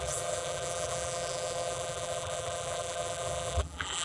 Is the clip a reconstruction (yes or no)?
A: yes